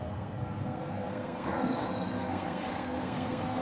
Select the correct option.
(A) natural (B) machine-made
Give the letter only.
B